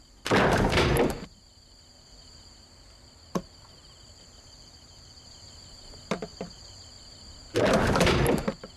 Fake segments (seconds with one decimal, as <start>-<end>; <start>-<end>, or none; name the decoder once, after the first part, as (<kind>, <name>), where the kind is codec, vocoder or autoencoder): none